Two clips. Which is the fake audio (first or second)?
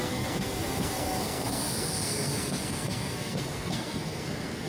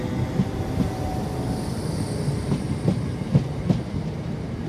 first